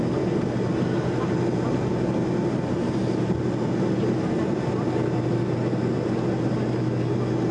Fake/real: real